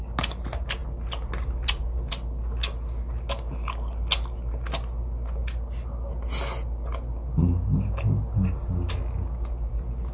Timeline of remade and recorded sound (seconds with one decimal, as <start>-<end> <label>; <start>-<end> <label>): 0.0-10.1 recorded